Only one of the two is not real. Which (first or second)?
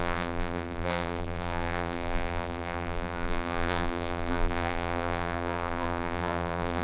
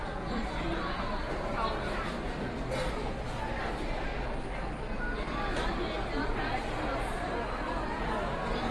first